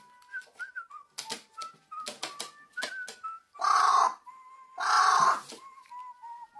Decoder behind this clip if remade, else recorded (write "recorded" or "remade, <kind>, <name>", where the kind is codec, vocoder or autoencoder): recorded